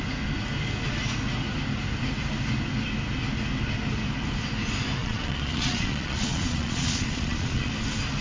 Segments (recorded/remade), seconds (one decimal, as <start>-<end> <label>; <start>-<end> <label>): 0.0-5.0 recorded; 5.0-7.7 remade; 7.7-8.2 recorded